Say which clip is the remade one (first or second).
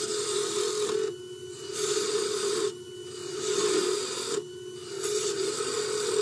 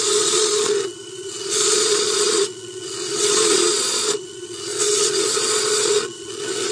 second